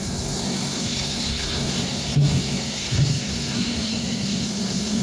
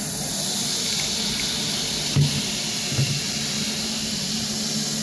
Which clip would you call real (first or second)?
second